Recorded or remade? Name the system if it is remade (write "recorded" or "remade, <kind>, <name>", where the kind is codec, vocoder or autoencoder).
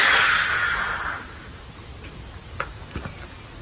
recorded